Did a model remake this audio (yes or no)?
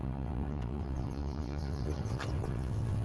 yes